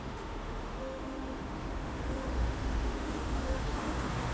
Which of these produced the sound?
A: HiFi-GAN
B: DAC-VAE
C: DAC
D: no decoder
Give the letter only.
B